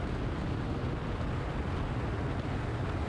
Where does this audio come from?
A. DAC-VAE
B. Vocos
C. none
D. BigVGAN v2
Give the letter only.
C